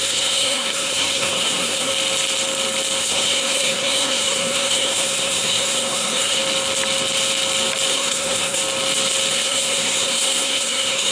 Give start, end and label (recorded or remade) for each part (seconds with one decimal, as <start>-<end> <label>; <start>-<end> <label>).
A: 0.0-1.9 remade; 1.9-3.0 recorded; 3.0-6.4 remade; 6.4-7.9 recorded; 7.9-8.6 remade; 8.6-9.3 recorded; 9.3-11.1 remade